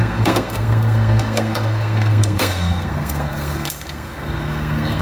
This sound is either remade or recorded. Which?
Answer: remade